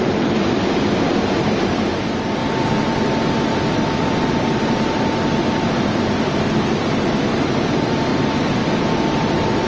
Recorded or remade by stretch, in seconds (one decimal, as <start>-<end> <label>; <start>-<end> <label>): 0.0-9.7 recorded